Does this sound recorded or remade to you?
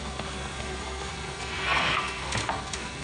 remade